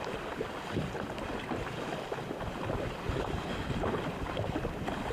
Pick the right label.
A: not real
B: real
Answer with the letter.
B